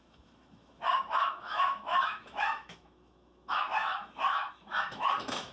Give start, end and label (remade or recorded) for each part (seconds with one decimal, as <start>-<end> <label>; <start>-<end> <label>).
0.0-5.5 remade